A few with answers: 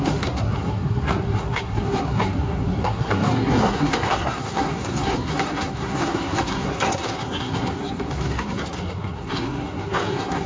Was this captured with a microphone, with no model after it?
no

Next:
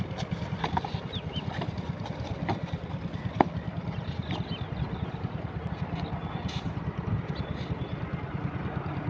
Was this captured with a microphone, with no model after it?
yes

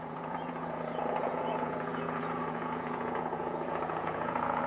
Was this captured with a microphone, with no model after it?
no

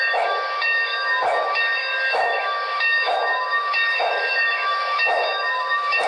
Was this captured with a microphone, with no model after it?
no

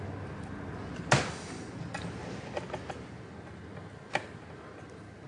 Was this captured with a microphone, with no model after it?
yes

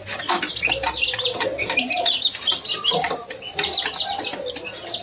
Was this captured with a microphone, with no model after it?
yes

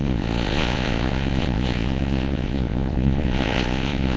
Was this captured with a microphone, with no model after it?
no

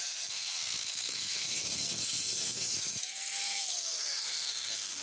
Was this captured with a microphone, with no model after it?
no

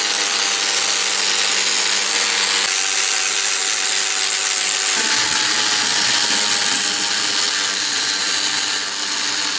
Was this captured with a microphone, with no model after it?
yes